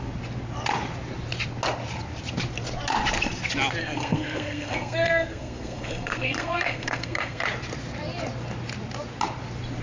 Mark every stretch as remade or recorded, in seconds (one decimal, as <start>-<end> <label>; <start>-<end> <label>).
0.0-3.8 recorded; 3.8-7.4 remade; 7.4-9.8 recorded